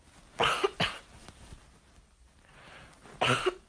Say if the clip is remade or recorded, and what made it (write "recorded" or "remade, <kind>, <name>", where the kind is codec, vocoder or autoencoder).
recorded